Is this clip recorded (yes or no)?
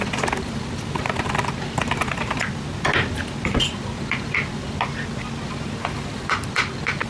yes